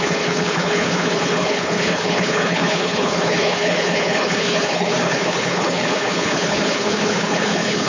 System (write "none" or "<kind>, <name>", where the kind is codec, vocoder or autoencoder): codec, HILCodec